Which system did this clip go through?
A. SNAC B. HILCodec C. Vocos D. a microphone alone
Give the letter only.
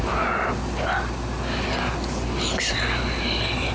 D